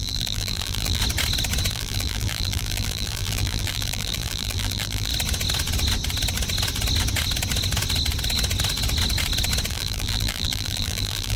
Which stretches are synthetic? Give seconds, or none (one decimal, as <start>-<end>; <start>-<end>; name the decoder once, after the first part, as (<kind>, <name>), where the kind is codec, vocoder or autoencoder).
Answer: 0.0-1.0 (vocoder, BigVGAN v2); 1.7-5.1; 9.7-11.4